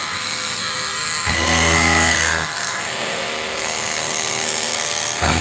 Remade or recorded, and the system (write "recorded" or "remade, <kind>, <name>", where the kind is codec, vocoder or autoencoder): remade, codec, SNAC